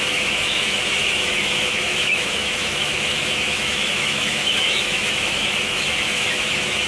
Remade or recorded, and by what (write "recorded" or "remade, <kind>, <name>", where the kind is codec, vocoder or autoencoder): remade, autoencoder, DAC-VAE